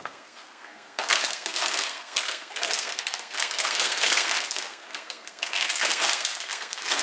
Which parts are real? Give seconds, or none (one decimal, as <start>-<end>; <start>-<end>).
none